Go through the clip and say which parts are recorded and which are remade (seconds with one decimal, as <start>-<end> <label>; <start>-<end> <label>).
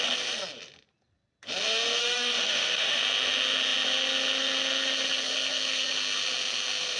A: 0.0-2.0 recorded; 2.0-3.0 remade; 3.0-7.0 recorded